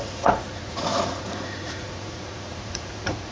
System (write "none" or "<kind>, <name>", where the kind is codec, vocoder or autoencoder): vocoder, Vocos